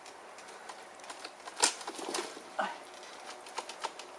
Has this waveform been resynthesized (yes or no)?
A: no